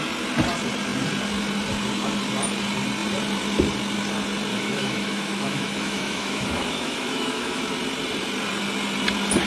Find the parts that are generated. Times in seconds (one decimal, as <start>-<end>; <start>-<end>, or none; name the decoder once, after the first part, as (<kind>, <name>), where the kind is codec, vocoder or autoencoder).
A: 4.5-7.6 (autoencoder, DAC-VAE)